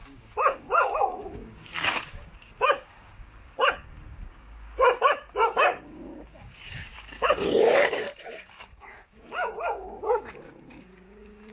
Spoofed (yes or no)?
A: yes